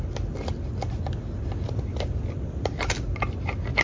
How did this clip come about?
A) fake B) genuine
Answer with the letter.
B